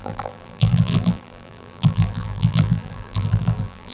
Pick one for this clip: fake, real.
fake